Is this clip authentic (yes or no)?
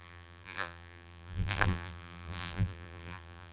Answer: no